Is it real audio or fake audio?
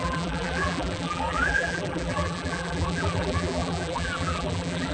fake